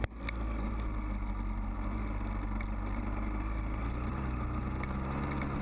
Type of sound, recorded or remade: recorded